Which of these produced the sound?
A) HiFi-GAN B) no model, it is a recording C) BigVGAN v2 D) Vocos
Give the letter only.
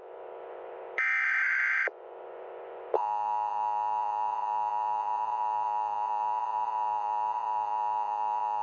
D